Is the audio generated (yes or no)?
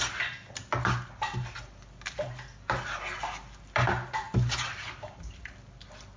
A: no